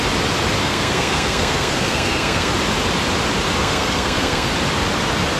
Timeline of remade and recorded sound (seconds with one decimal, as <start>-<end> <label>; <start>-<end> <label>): 0.0-0.6 recorded; 0.6-2.5 remade; 2.5-3.6 recorded; 3.6-4.5 remade; 4.5-5.4 recorded